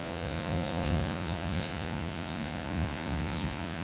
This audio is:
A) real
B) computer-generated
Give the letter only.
B